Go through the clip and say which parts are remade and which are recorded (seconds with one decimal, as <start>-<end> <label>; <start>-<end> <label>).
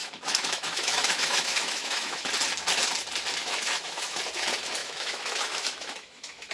0.0-2.3 remade; 2.3-3.4 recorded; 3.4-4.2 remade; 4.2-4.8 recorded; 4.8-6.5 remade